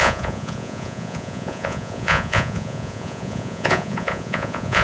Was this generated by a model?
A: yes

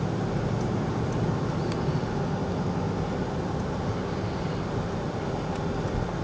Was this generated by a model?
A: no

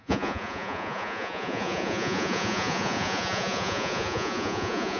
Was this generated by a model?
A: yes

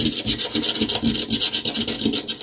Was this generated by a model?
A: no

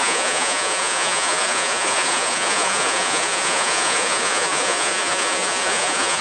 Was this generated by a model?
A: yes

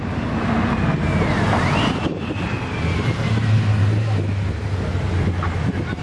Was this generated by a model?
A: no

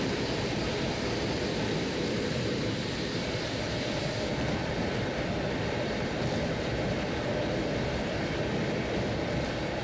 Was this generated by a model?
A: yes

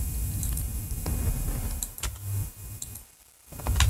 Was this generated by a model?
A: no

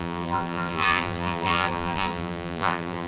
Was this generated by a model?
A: yes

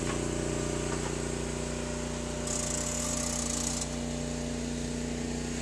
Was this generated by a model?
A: no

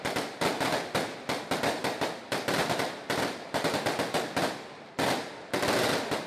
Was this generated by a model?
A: no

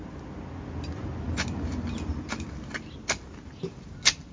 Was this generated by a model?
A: no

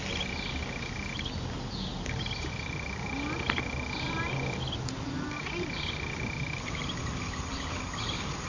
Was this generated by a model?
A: no